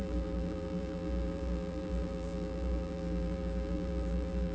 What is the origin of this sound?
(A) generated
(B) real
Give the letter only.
A